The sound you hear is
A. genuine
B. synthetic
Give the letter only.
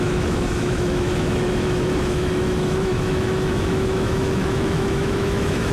B